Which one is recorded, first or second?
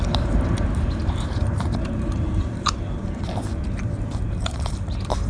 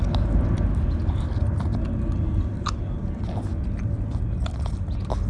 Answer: second